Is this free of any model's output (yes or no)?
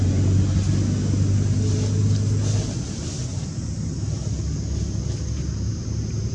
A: yes